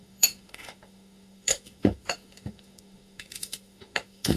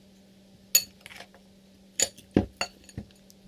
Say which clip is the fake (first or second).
first